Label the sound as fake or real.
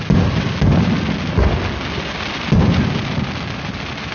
real